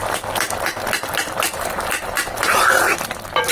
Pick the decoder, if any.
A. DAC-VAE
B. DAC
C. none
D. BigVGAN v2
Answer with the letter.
C